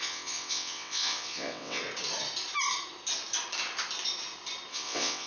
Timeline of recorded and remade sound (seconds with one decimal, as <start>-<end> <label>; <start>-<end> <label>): 0.0-1.8 remade; 1.8-4.7 recorded; 4.7-5.3 remade